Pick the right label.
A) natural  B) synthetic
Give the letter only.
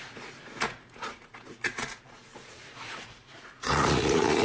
B